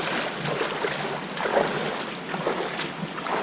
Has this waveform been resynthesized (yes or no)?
no